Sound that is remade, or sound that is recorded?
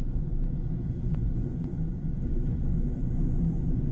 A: remade